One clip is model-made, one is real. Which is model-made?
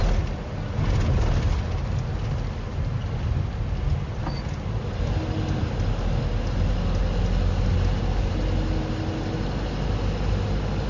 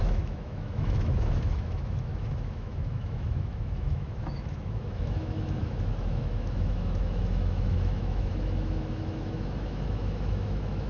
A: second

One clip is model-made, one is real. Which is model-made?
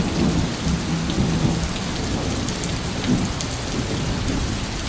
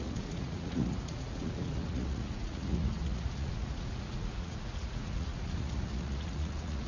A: second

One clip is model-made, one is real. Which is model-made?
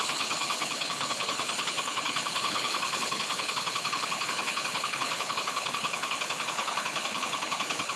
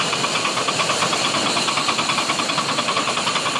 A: first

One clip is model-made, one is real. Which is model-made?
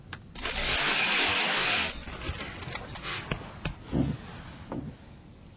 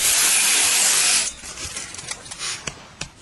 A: second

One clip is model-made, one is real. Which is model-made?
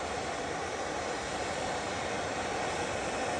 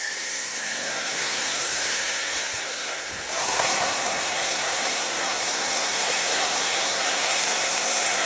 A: second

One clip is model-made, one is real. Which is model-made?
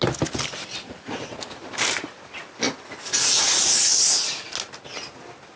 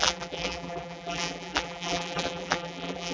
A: second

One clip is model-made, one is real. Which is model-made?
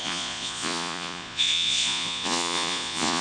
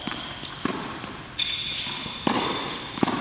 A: first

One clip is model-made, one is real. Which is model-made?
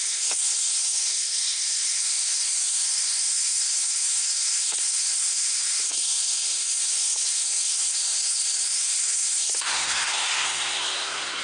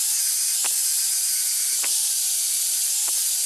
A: first